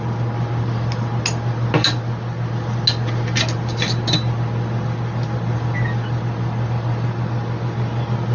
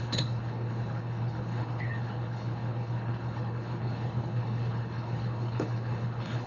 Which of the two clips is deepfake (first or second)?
second